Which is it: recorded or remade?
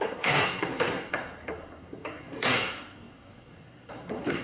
remade